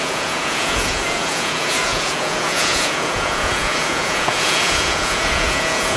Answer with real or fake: fake